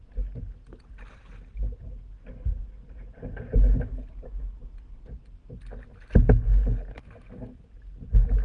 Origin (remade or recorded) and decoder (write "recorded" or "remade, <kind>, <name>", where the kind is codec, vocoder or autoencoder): recorded